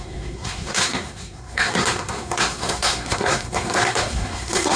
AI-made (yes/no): yes